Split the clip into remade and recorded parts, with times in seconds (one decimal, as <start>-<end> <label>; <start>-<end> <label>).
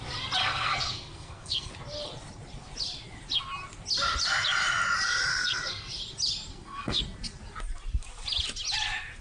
0.0-0.4 recorded; 0.4-1.7 remade; 1.7-5.3 recorded; 5.3-5.9 remade; 5.9-6.5 recorded; 6.5-7.0 remade; 7.0-9.2 recorded